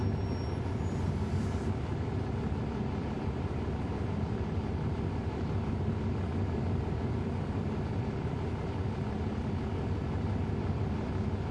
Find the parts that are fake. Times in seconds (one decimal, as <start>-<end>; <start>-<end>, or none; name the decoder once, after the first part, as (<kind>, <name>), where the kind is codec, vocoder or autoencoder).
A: none